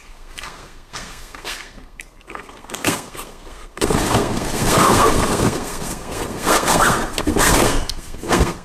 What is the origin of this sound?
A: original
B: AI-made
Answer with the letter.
B